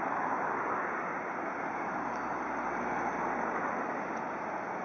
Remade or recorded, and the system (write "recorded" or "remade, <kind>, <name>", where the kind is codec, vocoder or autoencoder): recorded